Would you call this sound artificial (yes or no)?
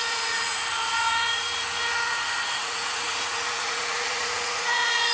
yes